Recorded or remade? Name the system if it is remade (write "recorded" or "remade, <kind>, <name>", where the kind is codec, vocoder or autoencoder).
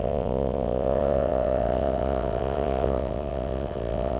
remade, vocoder, WaveNeXt